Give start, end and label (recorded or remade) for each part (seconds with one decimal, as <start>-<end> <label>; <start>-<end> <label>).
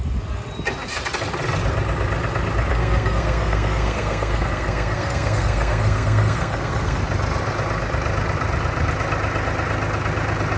0.0-2.7 recorded; 2.7-7.0 remade; 7.0-10.6 recorded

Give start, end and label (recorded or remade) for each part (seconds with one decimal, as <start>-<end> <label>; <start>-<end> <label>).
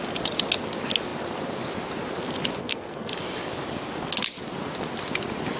0.0-2.6 recorded; 2.6-3.1 remade; 3.1-5.6 recorded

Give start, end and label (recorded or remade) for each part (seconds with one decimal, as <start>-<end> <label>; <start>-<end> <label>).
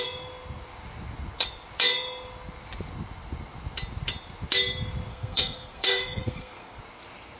0.0-5.1 recorded; 5.1-6.8 remade; 6.8-7.4 recorded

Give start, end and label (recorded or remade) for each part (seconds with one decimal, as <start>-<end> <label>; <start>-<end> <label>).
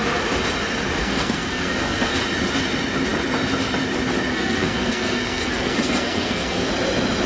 0.0-1.0 recorded; 1.0-2.2 remade; 2.2-4.3 recorded; 4.3-6.7 remade; 6.7-7.3 recorded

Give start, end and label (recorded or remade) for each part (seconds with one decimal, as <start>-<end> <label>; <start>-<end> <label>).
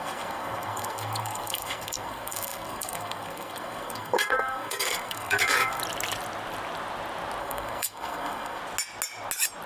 0.0-5.8 remade; 5.8-7.4 recorded; 7.4-8.6 remade; 8.6-9.7 recorded